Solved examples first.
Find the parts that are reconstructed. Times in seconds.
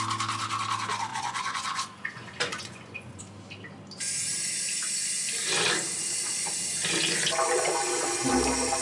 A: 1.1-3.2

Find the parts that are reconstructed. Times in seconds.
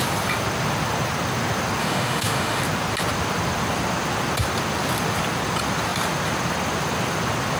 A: 1.8-2.6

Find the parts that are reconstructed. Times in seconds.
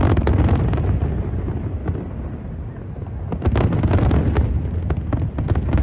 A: none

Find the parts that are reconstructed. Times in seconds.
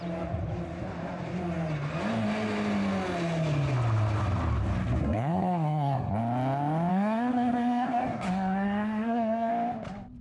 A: 5.0-6.1; 6.9-9.5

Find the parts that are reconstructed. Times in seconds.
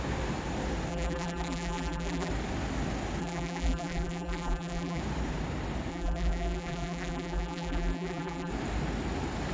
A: 0.9-2.3; 3.2-5.0; 5.9-8.5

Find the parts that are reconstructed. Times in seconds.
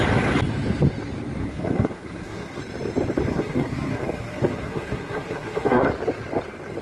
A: 1.4-2.6; 3.3-5.9